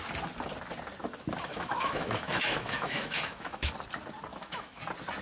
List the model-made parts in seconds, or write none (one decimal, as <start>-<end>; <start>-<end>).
1.5-3.7; 4.3-4.8